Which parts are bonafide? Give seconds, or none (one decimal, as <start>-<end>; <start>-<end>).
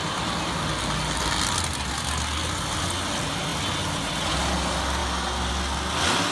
0.0-6.3